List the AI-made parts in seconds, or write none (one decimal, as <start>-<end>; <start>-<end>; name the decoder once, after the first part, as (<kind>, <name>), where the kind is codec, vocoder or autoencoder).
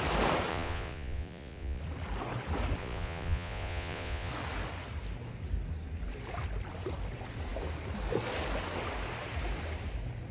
0.5-1.8 (vocoder, Vocos); 2.8-4.3